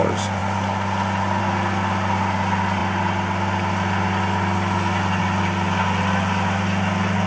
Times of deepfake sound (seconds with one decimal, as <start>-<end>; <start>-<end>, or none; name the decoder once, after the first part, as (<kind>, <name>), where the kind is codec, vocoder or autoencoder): none